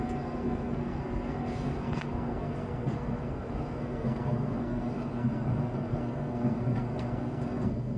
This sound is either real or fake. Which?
fake